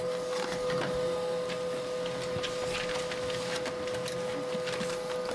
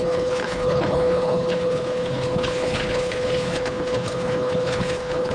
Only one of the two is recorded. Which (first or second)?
first